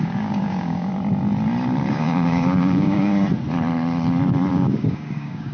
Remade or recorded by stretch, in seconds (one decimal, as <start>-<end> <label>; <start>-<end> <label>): 0.0-0.9 remade; 0.9-1.9 recorded; 1.9-3.1 remade; 3.1-4.5 recorded; 4.5-5.5 remade